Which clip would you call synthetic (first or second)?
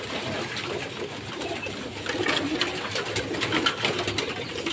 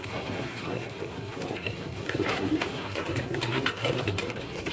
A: second